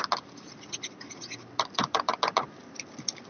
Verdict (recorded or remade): recorded